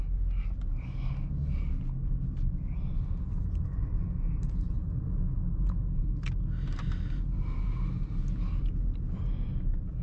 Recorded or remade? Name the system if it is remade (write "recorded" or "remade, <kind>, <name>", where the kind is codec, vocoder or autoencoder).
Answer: recorded